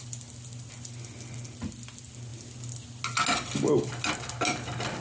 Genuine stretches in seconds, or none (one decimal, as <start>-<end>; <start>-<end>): 0.0-5.0

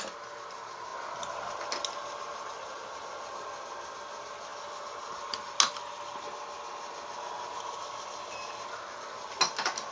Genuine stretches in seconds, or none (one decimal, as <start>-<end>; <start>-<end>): 0.0-9.9

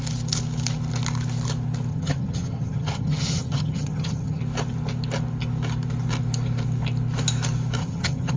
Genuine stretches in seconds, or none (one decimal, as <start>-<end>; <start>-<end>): 0.0-1.9; 4.4-7.8

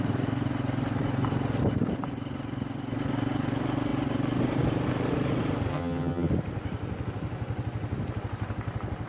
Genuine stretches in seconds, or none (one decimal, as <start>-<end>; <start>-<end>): 0.0-5.7; 6.3-9.1

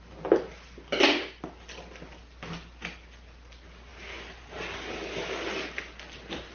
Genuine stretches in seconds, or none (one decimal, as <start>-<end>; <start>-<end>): 0.0-6.5

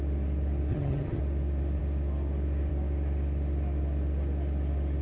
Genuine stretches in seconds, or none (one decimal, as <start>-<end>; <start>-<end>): 0.0-0.7; 1.2-5.0